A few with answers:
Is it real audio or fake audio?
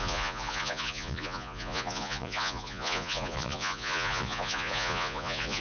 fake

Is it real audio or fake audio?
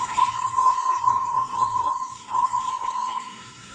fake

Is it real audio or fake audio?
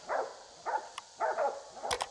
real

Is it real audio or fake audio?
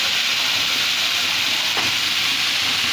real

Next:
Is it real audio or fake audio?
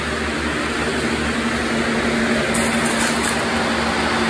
real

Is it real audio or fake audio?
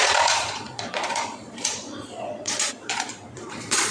fake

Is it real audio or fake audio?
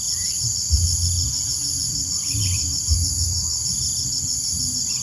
real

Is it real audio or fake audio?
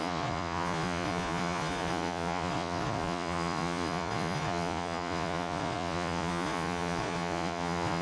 fake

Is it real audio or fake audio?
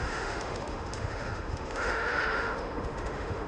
fake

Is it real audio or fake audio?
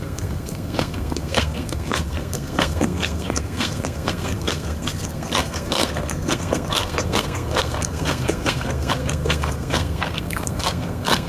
fake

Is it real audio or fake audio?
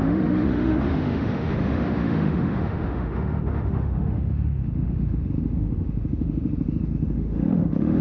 fake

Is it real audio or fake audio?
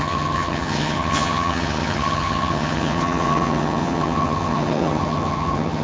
fake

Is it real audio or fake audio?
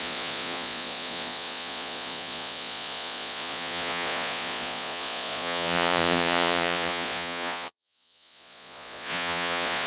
fake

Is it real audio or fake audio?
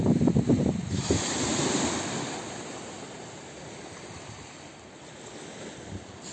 real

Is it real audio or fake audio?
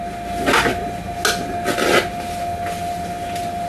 real